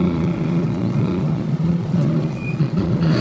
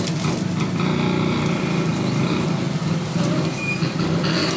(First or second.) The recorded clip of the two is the second